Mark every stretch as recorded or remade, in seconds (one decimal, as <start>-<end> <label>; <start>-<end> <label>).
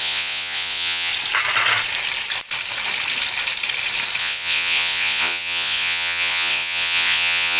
0.0-1.1 remade; 1.1-4.2 recorded; 4.2-7.6 remade